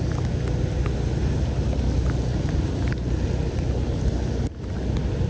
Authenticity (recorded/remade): recorded